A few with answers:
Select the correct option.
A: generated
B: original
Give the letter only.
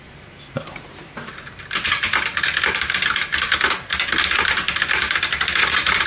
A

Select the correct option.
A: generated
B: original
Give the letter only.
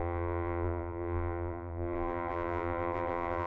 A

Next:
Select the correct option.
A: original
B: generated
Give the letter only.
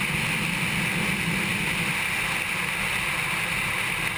A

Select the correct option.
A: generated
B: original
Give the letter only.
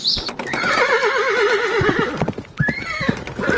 B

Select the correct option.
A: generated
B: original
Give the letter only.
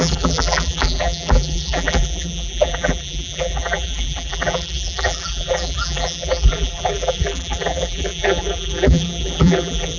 A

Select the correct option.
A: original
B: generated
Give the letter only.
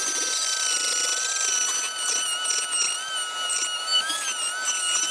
A